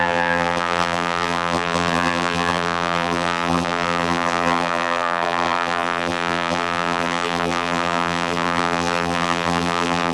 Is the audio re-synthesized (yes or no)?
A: yes